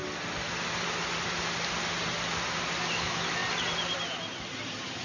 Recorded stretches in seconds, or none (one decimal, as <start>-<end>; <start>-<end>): 0.0-3.0; 3.4-5.0